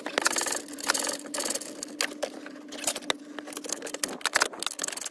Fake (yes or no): no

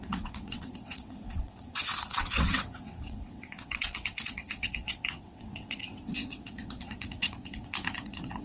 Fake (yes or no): yes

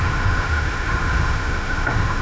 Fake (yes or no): yes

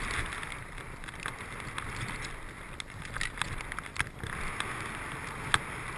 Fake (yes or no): no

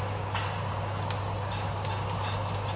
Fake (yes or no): no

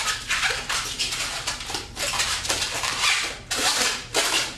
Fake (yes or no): yes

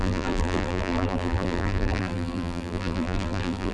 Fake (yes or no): yes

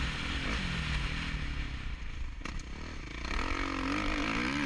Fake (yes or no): no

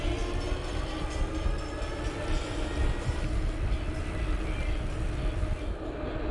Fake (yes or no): no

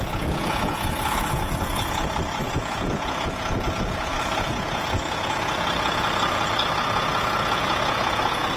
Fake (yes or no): yes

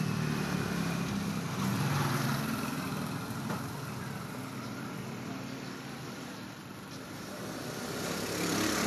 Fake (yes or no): yes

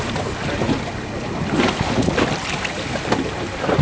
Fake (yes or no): no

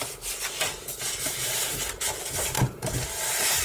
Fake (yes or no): no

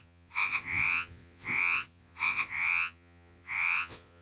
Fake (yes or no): yes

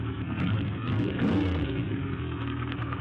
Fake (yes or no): yes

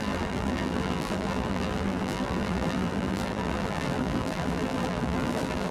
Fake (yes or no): yes